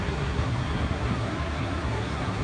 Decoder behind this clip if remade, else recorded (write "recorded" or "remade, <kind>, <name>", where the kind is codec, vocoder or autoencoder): remade, codec, SNAC